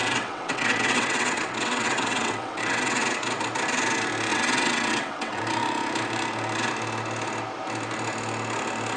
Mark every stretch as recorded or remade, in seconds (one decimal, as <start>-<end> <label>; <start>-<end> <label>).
0.0-3.0 remade; 3.0-4.3 recorded; 4.3-5.4 remade; 5.4-9.0 recorded